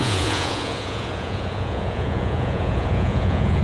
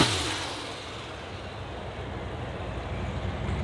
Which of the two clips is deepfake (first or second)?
first